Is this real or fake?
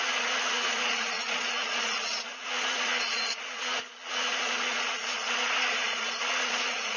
fake